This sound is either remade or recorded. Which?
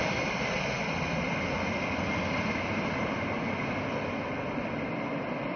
recorded